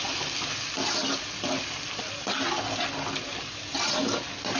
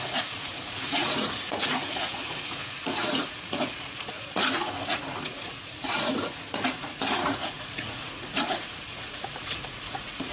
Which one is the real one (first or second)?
first